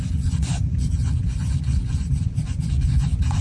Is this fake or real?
fake